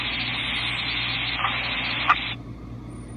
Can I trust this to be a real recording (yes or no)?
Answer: yes